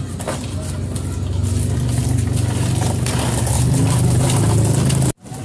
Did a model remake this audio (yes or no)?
no